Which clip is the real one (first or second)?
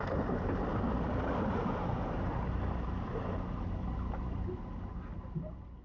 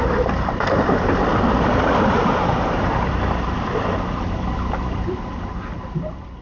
first